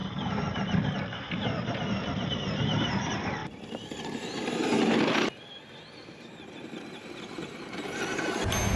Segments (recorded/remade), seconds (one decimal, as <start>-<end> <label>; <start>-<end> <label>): 0.0-8.8 recorded